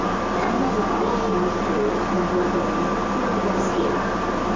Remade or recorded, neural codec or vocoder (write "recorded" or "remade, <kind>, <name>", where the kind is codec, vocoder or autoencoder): recorded